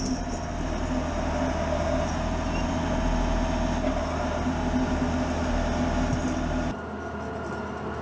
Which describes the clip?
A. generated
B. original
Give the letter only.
B